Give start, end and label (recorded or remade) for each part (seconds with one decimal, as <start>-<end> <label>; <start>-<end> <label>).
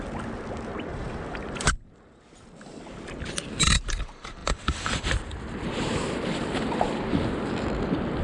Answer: 0.0-0.9 recorded; 0.9-2.8 remade; 2.8-4.4 recorded; 4.4-7.1 remade; 7.1-8.2 recorded